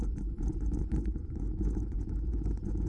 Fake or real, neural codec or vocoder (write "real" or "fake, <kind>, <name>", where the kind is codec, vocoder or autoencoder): fake, vocoder, Vocos